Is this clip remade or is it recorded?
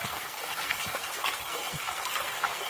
remade